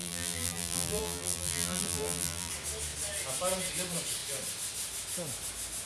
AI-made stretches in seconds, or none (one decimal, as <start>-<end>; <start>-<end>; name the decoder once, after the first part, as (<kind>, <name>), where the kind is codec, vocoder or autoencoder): 0.0-2.5 (vocoder, BigVGAN v2)